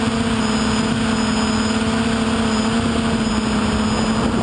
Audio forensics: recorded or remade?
recorded